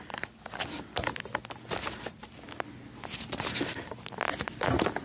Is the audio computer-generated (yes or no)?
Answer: no